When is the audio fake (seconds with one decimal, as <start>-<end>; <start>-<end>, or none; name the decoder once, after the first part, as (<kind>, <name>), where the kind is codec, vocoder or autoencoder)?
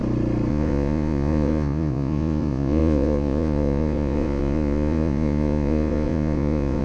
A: 0.5-6.8 (vocoder, Vocos)